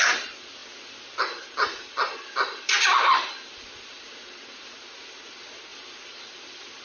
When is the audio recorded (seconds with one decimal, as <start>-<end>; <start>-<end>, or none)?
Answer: 0.0-5.7